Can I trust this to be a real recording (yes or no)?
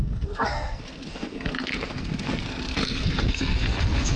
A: no